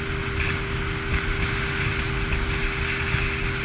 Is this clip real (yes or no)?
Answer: yes